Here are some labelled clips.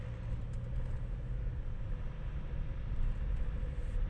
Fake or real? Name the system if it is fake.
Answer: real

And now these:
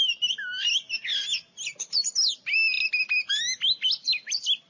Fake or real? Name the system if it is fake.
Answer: real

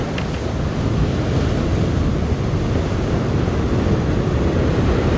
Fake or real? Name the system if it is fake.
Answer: real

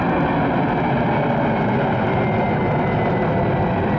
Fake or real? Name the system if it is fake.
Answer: real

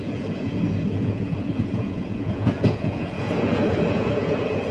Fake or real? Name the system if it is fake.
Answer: fake, vocoder, Vocos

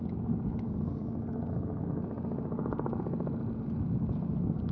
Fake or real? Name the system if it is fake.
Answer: real